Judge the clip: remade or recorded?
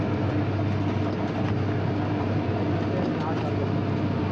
recorded